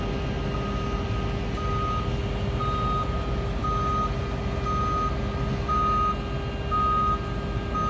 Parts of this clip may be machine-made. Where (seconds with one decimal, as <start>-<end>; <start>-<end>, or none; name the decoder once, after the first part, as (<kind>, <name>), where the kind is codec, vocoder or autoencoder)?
none